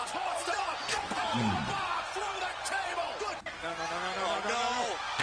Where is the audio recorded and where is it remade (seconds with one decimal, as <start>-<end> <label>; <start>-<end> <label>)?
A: 0.0-3.1 remade; 3.1-5.2 recorded